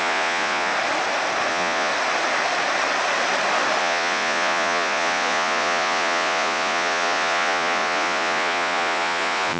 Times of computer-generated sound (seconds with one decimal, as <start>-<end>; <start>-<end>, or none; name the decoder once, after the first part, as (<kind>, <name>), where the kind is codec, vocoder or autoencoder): 0.0-0.7 (vocoder, Vocos); 1.5-1.9; 3.8-9.6